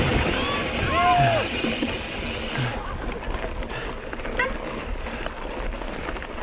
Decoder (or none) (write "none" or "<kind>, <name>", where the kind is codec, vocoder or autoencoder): none